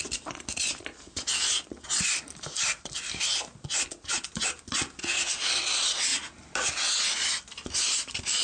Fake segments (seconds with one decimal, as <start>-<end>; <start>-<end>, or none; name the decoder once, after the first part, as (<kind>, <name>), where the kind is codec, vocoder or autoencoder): none